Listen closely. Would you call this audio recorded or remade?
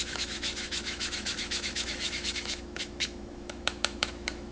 remade